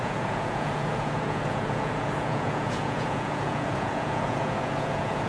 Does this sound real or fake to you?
fake